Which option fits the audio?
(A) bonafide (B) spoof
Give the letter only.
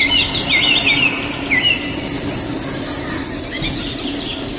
A